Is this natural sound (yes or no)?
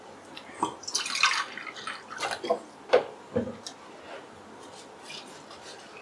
yes